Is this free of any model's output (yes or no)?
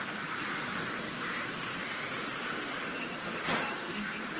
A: no